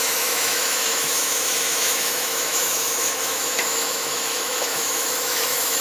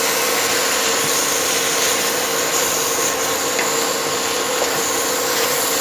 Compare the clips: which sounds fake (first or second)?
first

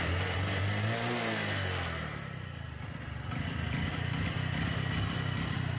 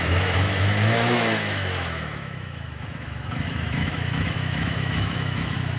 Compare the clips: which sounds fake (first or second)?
second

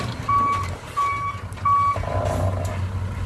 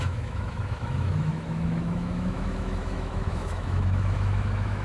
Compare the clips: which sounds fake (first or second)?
second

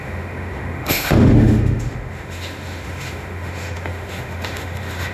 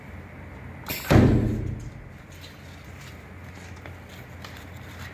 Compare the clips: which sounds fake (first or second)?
first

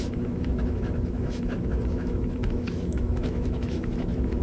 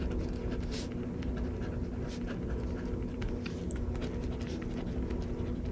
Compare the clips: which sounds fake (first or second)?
first